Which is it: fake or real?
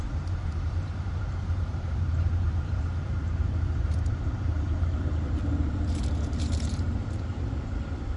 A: fake